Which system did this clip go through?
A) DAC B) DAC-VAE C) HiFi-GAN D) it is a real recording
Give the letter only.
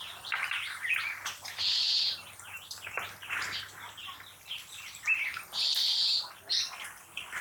D